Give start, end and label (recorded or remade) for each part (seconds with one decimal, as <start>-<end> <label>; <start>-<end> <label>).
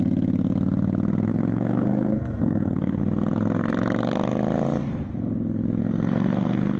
0.0-1.3 recorded; 1.3-3.0 remade; 3.0-5.8 recorded; 5.8-6.8 remade